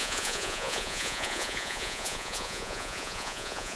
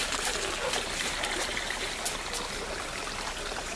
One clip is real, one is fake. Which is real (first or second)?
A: second